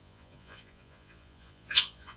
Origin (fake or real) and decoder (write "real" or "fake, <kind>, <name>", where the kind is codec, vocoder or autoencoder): fake, vocoder, Vocos